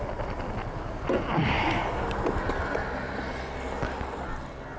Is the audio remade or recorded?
recorded